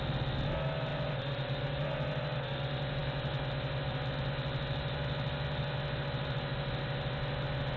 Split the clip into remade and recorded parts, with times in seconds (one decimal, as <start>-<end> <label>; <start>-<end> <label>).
0.0-0.9 recorded; 0.9-1.7 remade; 1.7-7.8 recorded